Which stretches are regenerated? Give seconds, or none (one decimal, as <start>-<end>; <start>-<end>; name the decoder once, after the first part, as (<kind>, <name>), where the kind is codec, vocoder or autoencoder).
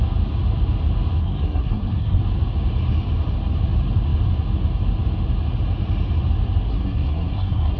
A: 1.2-2.2 (codec, SNAC); 6.7-7.8